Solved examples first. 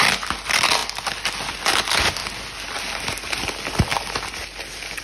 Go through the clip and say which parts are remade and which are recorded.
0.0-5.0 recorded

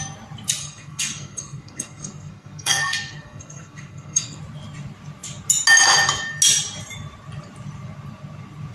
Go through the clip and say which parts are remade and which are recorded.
0.0-0.6 recorded; 0.6-4.4 remade; 4.4-8.7 recorded

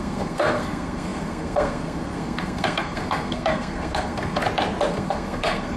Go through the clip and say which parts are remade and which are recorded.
0.0-4.4 remade; 4.4-4.9 recorded; 4.9-5.8 remade